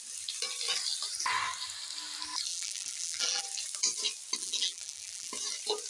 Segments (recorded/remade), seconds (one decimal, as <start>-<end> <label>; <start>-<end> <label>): 0.0-2.5 recorded; 2.5-3.4 remade; 3.4-4.4 recorded; 4.4-5.3 remade; 5.3-5.9 recorded